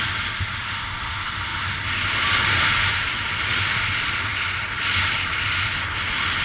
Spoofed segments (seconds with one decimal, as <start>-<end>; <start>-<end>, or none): none